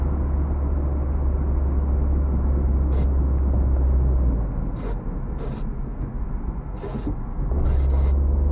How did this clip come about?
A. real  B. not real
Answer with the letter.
A